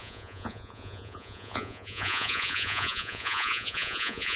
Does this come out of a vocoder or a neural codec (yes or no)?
yes